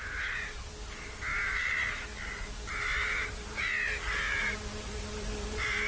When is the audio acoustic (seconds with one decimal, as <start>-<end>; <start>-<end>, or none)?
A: 0.0-5.9